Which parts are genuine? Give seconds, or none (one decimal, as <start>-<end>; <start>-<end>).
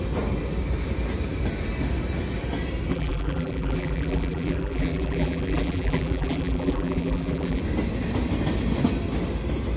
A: 0.0-2.9; 7.6-9.8